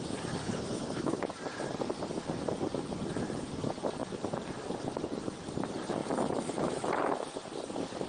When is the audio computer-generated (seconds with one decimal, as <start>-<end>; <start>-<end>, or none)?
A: 0.4-1.3